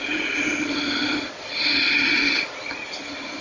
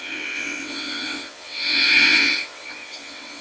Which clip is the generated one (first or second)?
second